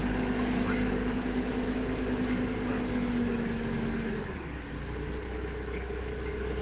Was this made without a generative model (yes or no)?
no